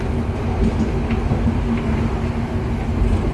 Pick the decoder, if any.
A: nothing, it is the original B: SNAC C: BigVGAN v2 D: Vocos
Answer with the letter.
A